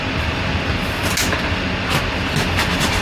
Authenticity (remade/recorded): recorded